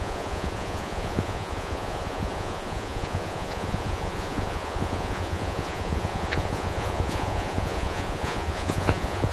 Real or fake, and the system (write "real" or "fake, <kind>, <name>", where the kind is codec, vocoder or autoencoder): fake, vocoder, Vocos